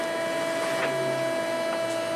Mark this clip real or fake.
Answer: real